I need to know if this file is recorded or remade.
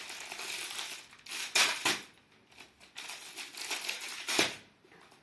recorded